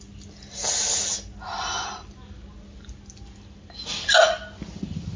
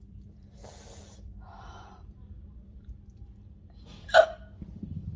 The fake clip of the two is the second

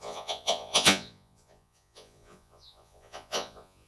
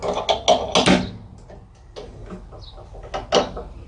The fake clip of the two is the first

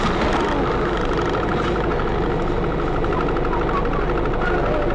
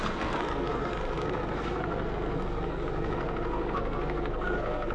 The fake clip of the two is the second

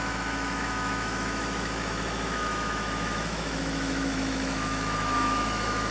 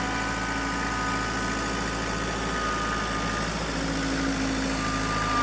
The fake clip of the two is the first